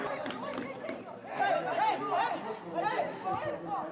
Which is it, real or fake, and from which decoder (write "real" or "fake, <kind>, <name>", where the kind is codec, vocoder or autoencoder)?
real